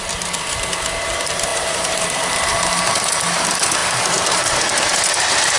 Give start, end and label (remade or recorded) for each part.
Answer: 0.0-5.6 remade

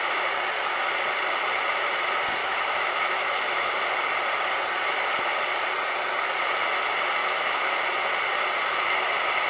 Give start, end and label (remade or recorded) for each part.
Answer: 0.0-2.4 recorded; 2.4-3.7 remade; 3.7-7.2 recorded; 7.2-7.8 remade; 7.8-9.5 recorded

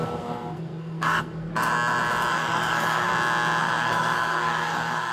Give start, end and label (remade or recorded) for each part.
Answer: 0.0-1.5 remade; 1.5-2.3 recorded; 2.3-3.1 remade; 3.1-3.6 recorded; 3.6-5.1 remade

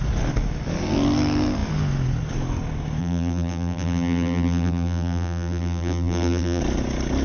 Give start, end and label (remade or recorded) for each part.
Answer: 0.0-3.0 recorded; 3.0-6.6 remade; 6.6-7.2 recorded

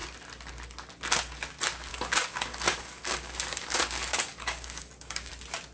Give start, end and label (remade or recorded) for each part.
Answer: 0.0-1.9 recorded; 1.9-5.3 remade; 5.3-5.7 recorded

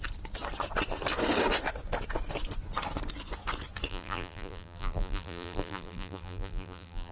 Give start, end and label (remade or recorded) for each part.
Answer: 0.0-3.9 recorded; 3.9-7.1 remade

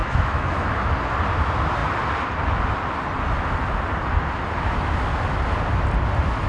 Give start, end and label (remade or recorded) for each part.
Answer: 0.0-0.9 remade; 0.9-6.5 recorded

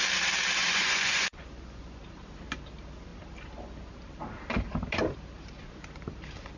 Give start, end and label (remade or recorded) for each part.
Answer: 0.0-0.6 recorded; 0.6-2.0 remade; 2.0-6.6 recorded